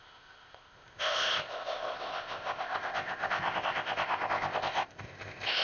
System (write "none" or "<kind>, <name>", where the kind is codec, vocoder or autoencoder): codec, ZipCodec